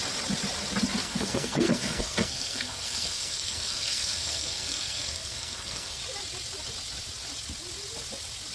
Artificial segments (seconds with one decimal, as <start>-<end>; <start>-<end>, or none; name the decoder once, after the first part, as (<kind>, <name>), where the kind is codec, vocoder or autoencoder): 1.0-6.0 (codec, SNAC)

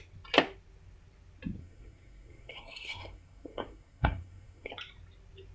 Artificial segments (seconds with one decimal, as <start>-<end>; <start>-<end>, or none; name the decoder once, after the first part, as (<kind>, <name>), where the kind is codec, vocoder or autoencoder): 1.6-4.7 (codec, SNAC)

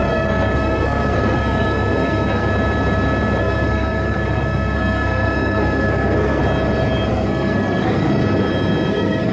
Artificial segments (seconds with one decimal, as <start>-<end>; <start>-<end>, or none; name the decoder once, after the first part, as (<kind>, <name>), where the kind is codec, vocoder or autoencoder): 0.0-2.5 (codec, SNAC); 3.4-6.4; 7.1-8.2; 8.9-9.3

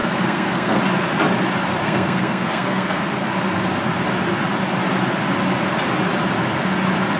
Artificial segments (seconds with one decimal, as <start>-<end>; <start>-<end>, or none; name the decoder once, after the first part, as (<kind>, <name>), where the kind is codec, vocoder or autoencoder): 0.0-0.8 (codec, SNAC); 1.8-3.0

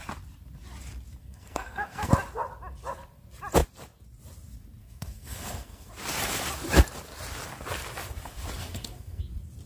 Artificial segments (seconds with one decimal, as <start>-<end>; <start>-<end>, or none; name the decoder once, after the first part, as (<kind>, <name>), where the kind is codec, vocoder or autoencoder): 1.2-2.1 (codec, SNAC); 4.8-5.9; 8.6-9.2

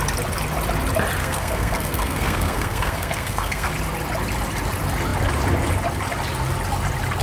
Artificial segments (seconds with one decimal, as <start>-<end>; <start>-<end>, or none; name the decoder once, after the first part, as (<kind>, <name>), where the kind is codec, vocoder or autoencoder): 1.2-3.7 (codec, SNAC)

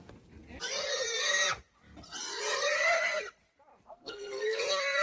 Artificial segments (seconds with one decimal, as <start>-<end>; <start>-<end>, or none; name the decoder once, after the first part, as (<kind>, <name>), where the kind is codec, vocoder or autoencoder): 3.7-4.6 (codec, SNAC)

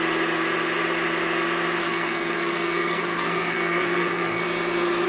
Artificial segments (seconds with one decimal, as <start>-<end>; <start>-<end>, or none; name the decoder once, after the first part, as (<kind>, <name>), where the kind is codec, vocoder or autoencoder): 1.8-4.4 (codec, SNAC)